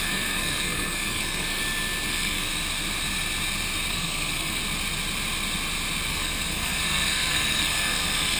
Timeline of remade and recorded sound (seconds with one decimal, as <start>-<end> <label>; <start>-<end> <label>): 0.0-1.6 remade; 1.6-2.1 recorded; 2.1-2.5 remade; 2.5-3.9 recorded; 3.9-4.6 remade; 4.6-6.1 recorded; 6.1-8.4 remade